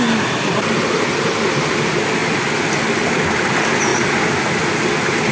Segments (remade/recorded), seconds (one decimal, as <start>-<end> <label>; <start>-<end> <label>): 0.0-2.2 recorded; 2.2-2.9 remade; 2.9-5.3 recorded